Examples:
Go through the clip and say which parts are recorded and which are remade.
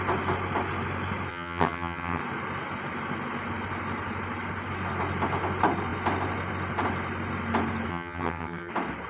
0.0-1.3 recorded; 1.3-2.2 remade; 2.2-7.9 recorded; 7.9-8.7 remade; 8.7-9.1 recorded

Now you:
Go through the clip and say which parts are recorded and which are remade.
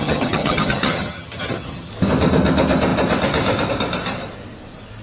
0.0-1.9 remade; 1.9-5.0 recorded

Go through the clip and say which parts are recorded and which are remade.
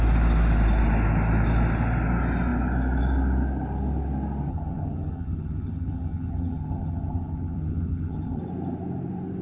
0.0-4.5 recorded; 4.5-8.4 remade; 8.4-9.4 recorded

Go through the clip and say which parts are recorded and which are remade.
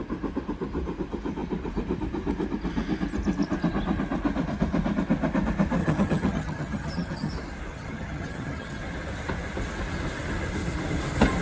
0.0-5.8 recorded; 5.8-7.3 remade; 7.3-7.7 recorded; 7.7-8.8 remade; 8.8-11.4 recorded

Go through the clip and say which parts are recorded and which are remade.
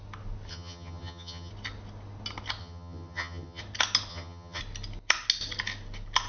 0.0-0.5 recorded; 0.5-1.5 remade; 1.5-2.6 recorded; 2.6-3.6 remade; 3.6-4.1 recorded; 4.1-4.6 remade; 4.6-6.3 recorded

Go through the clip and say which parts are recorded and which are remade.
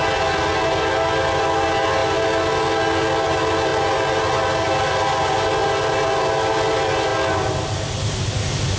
0.0-8.8 recorded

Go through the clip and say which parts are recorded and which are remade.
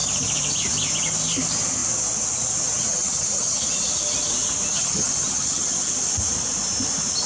0.0-2.9 recorded; 2.9-3.6 remade; 3.6-4.7 recorded; 4.7-5.6 remade; 5.6-7.3 recorded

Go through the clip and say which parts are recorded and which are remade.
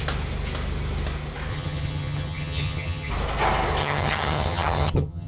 0.0-1.5 recorded; 1.5-3.1 remade; 3.1-3.8 recorded; 3.8-5.3 remade